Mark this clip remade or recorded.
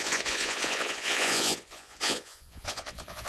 remade